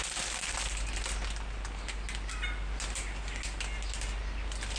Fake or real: real